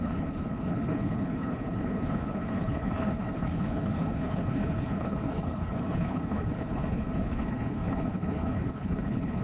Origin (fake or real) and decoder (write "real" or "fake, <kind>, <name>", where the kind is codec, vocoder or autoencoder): fake, codec, HILCodec